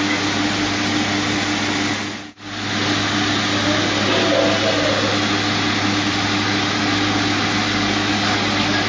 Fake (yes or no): no